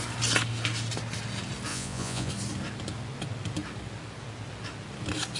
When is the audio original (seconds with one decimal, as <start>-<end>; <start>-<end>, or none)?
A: 0.0-1.7; 2.3-5.4

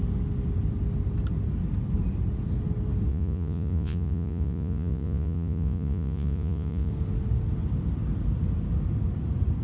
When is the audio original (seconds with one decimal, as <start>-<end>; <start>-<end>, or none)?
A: 0.0-3.1; 6.9-9.6

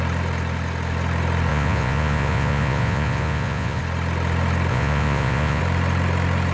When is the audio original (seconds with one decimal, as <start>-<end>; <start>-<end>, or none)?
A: 0.0-1.5; 3.8-4.7; 5.6-6.5

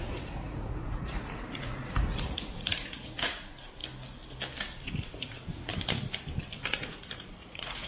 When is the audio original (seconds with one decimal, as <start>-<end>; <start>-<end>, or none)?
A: 3.8-4.8; 5.7-6.4